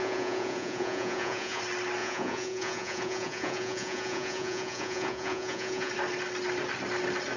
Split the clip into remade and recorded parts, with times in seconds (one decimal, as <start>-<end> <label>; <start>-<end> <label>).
0.0-1.6 remade; 1.6-2.0 recorded; 2.0-5.9 remade; 5.9-7.4 recorded